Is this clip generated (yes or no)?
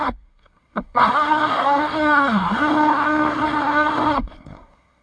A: yes